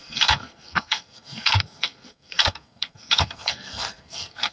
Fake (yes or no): yes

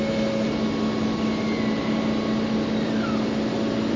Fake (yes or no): no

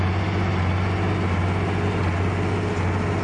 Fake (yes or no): no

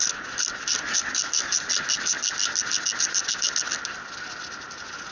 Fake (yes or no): no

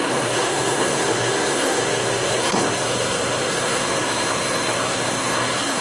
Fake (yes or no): yes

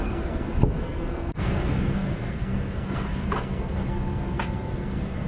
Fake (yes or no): yes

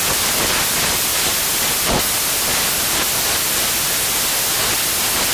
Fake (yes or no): no